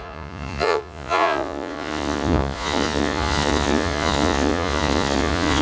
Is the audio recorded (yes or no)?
no